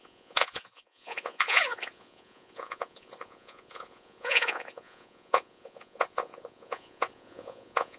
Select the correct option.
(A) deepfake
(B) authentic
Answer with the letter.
A